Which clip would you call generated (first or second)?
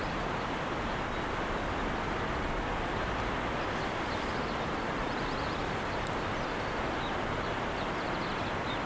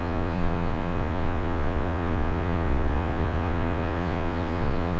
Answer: second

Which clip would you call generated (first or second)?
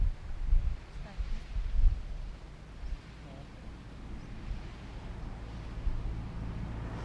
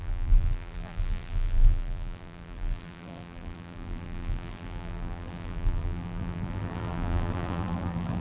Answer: second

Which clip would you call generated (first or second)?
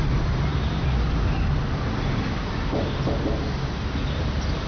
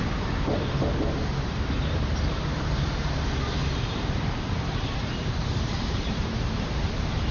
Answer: second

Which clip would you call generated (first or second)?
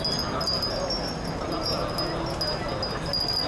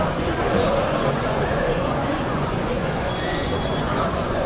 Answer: second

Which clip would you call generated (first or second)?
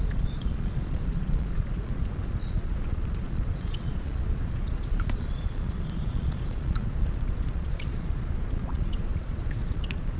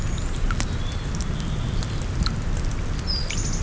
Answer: first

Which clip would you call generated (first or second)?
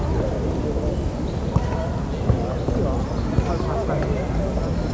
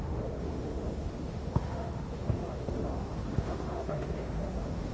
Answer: second